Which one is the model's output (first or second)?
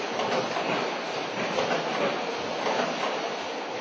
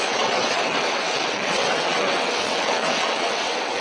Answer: second